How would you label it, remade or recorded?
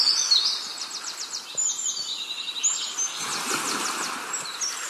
recorded